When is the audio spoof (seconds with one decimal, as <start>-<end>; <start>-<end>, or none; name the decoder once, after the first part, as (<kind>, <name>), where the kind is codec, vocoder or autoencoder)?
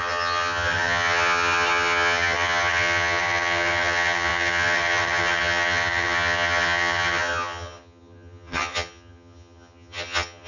0.0-10.5 (vocoder, HiFi-GAN)